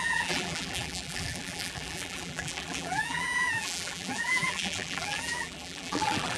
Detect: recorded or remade remade